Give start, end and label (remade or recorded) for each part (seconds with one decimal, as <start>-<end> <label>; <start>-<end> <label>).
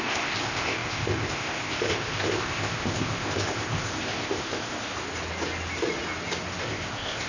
0.0-4.9 remade; 4.9-6.6 recorded; 6.6-7.3 remade